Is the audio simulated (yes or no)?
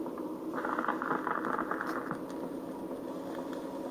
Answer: no